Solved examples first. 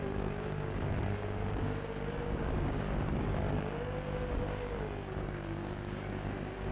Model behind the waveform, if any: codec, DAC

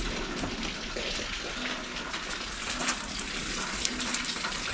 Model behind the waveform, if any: none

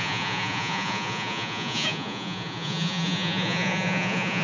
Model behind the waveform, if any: vocoder, Vocos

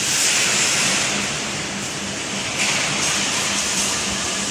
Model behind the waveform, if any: vocoder, BigVGAN v2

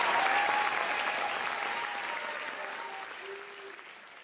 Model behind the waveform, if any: none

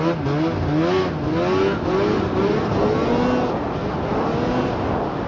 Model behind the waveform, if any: none